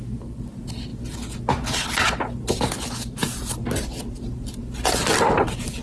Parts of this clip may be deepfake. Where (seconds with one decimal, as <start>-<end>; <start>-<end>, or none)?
none